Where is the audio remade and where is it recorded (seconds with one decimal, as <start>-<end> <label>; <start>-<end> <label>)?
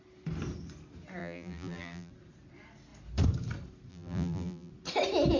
0.0-1.2 recorded; 1.2-2.1 remade; 2.1-3.9 recorded; 3.9-4.7 remade; 4.7-5.4 recorded